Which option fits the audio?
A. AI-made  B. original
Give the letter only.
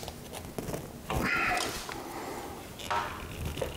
B